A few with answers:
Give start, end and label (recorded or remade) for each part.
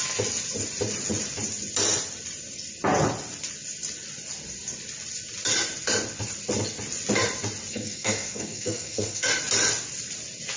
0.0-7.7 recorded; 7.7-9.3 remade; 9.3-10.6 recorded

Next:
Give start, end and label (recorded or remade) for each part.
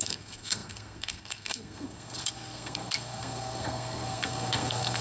0.0-5.0 remade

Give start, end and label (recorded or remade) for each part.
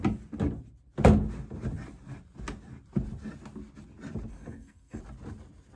0.0-4.3 recorded; 4.3-5.0 remade; 5.0-5.8 recorded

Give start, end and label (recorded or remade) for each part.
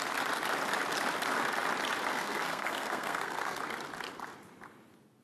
0.0-2.1 recorded; 2.1-3.6 remade; 3.6-5.2 recorded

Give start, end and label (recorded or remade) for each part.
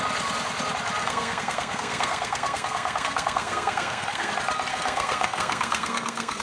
0.0-1.0 recorded; 1.0-4.3 remade; 4.3-4.7 recorded; 4.7-6.4 remade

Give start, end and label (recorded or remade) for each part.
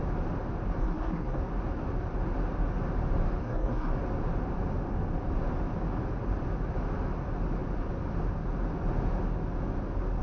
0.0-0.8 recorded; 0.8-1.4 remade; 1.4-3.4 recorded; 3.4-3.9 remade; 3.9-10.2 recorded